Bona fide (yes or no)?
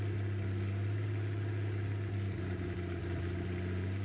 yes